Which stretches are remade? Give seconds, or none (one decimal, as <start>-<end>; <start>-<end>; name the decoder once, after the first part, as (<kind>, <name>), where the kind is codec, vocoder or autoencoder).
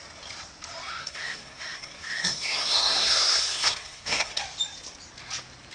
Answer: 1.0-4.4 (codec, SNAC)